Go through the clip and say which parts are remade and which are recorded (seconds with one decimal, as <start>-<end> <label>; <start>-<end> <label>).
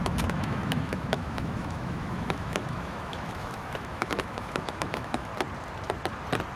0.0-5.3 remade; 5.3-6.6 recorded